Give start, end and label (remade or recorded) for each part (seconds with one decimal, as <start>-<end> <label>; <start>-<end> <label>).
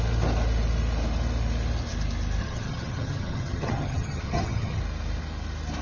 0.0-2.4 recorded; 2.4-4.8 remade; 4.8-5.8 recorded